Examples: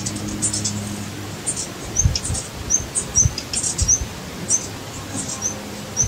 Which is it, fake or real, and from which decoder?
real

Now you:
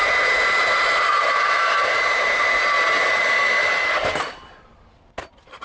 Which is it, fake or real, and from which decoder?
real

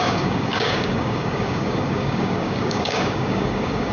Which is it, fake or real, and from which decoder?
fake, codec, DAC